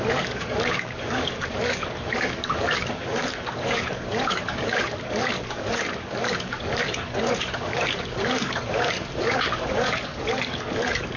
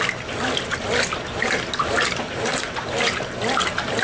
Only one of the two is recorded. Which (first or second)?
second